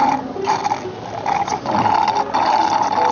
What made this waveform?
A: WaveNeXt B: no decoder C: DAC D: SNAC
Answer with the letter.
B